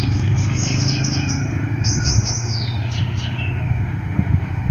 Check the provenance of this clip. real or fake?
fake